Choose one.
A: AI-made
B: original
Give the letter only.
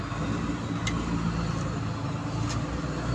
B